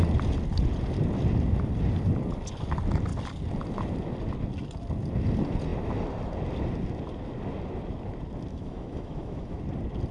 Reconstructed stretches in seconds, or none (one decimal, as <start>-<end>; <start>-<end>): 8.5-9.6